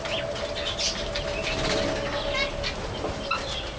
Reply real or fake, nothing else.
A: real